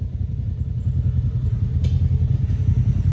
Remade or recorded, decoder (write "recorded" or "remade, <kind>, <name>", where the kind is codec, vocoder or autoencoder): recorded